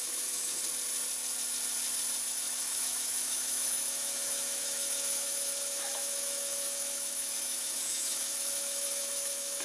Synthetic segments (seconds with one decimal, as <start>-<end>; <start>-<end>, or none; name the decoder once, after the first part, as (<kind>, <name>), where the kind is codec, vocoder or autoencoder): 0.0-0.6 (autoencoder, DAC-VAE); 2.2-9.6

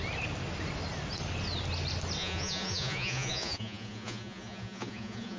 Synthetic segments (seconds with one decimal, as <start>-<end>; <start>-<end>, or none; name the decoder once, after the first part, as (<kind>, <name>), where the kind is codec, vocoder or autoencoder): 2.2-5.4 (vocoder, Vocos)